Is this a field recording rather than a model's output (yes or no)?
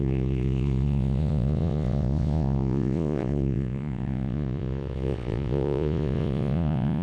no